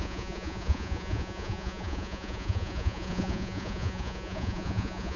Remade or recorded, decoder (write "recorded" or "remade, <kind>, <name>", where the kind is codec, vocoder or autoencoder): remade, vocoder, Vocos